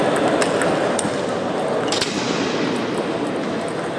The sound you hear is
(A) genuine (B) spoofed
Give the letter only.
A